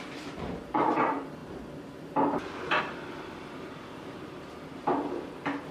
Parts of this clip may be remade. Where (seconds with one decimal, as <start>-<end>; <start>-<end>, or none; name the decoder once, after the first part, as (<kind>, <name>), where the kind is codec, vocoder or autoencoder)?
0.0-5.7 (vocoder, BigVGAN v2)